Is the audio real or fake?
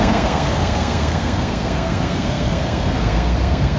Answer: fake